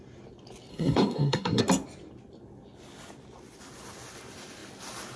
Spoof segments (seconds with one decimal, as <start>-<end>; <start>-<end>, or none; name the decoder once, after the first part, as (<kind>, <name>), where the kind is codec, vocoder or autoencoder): 0.7-1.6 (codec, SNAC)